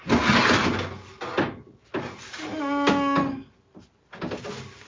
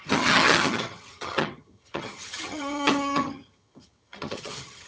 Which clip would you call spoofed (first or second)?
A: second